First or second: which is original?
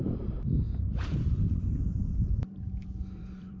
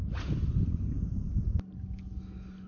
second